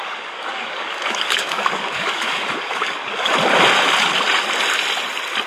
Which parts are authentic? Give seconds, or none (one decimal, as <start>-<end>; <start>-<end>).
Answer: 3.3-5.5